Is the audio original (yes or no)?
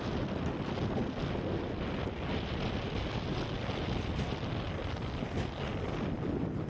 yes